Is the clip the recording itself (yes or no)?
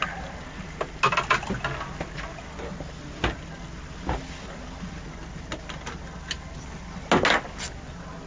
yes